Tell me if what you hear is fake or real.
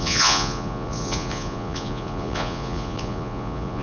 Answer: fake